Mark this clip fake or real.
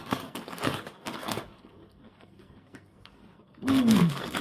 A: fake